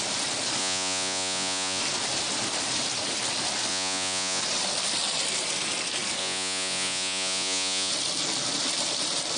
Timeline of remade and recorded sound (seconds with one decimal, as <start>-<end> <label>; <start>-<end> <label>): 0.0-0.6 recorded; 0.6-1.8 remade; 1.8-3.7 recorded; 3.7-4.4 remade; 4.4-6.2 recorded; 6.2-7.9 remade; 7.9-9.4 recorded